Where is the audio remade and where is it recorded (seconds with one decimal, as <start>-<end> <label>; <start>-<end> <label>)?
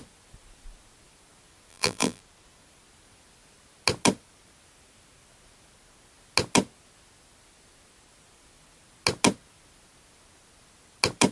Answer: 0.0-1.7 recorded; 1.7-2.2 remade; 2.2-11.3 recorded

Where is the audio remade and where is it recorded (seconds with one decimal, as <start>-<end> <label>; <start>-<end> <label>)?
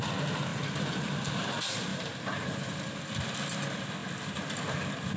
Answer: 0.0-0.5 recorded; 0.5-1.0 remade; 1.0-1.9 recorded; 1.9-3.1 remade; 3.1-5.2 recorded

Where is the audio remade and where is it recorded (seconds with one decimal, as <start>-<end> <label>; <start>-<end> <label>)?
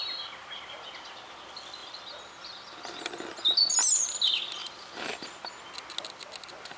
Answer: 0.0-4.6 recorded; 4.6-5.5 remade; 5.5-6.8 recorded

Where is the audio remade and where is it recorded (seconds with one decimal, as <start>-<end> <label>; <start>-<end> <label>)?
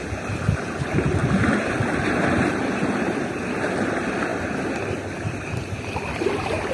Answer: 0.0-1.2 remade; 1.2-2.1 recorded; 2.1-4.3 remade; 4.3-4.8 recorded; 4.8-6.7 remade